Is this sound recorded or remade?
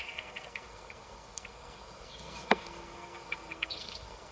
remade